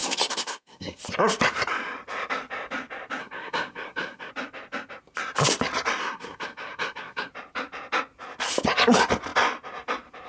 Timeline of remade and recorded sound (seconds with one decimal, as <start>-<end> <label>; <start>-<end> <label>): 0.0-1.0 remade; 1.0-3.2 recorded; 3.2-4.3 remade; 4.3-6.0 recorded; 6.0-7.3 remade; 7.3-10.3 recorded